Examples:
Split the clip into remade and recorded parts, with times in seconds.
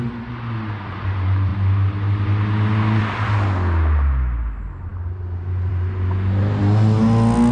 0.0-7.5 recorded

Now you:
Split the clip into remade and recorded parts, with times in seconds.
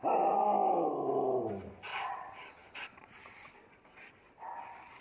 0.0-1.9 recorded; 1.9-5.0 remade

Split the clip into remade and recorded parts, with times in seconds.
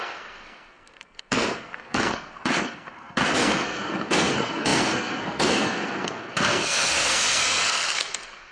0.0-8.5 remade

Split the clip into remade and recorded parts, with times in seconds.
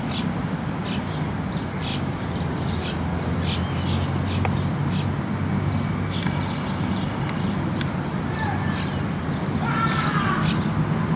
0.0-1.9 recorded; 1.9-2.7 remade; 2.7-11.2 recorded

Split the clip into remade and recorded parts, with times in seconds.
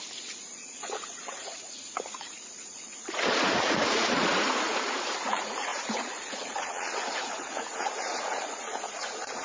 0.0-9.4 remade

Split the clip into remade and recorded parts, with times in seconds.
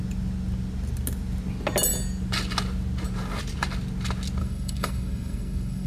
0.0-4.4 recorded; 4.4-5.9 remade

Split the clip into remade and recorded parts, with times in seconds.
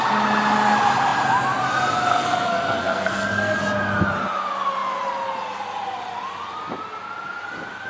0.0-2.1 recorded; 2.1-3.6 remade; 3.6-7.9 recorded